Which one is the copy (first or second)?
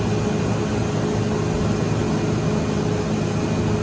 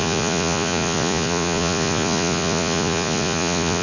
second